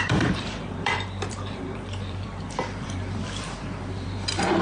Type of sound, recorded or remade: remade